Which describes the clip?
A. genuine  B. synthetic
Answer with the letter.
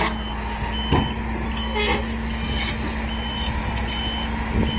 A